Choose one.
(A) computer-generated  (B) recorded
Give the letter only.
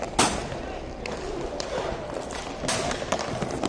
B